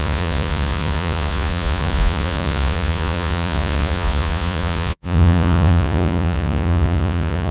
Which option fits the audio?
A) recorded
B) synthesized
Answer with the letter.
B